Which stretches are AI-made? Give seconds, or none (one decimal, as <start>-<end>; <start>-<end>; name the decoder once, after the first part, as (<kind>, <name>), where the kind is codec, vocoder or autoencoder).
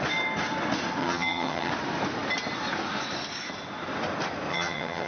1.0-1.7 (vocoder, HiFi-GAN); 4.5-5.1